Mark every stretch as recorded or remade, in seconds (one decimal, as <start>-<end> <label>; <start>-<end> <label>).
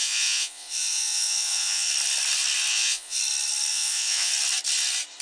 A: 0.0-1.9 remade; 1.9-2.7 recorded; 2.7-3.2 remade; 3.2-3.7 recorded; 3.7-4.3 remade; 4.3-5.2 recorded